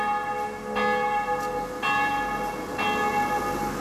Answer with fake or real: real